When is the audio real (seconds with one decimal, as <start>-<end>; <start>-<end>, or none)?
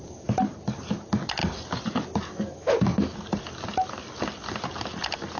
0.0-5.4